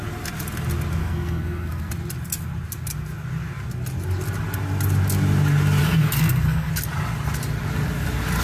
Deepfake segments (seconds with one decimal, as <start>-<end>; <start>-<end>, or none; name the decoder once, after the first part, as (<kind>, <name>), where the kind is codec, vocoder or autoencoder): 1.0-1.9 (codec, SNAC); 5.8-6.7